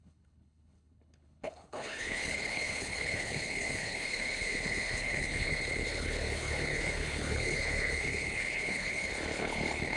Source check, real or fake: fake